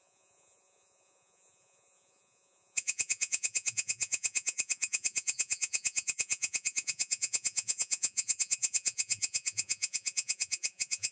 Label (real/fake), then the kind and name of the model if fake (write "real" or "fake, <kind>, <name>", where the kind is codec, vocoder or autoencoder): fake, vocoder, Vocos